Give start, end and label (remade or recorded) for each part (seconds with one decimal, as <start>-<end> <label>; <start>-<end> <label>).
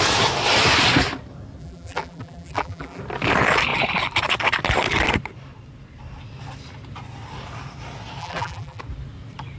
0.0-1.6 recorded; 1.6-3.0 remade; 3.0-8.2 recorded; 8.2-8.8 remade; 8.8-9.6 recorded